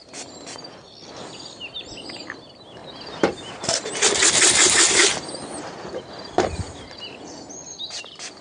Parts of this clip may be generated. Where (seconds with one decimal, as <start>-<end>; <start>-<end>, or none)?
2.8-7.4